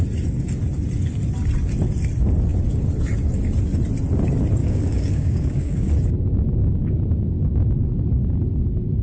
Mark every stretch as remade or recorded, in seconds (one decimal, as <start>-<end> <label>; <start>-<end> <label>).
0.0-4.6 recorded; 4.6-5.9 remade; 5.9-9.0 recorded